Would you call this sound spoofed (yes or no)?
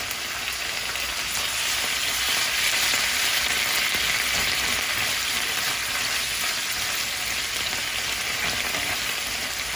no